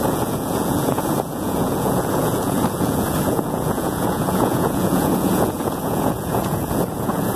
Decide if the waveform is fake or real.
fake